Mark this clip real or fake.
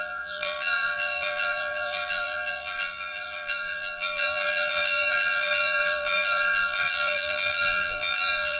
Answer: fake